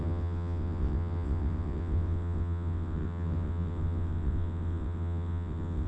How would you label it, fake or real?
fake